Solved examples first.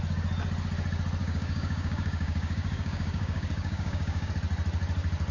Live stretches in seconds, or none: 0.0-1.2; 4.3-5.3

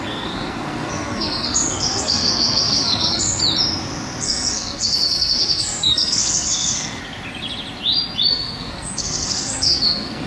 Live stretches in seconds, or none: 3.4-4.2; 7.0-8.3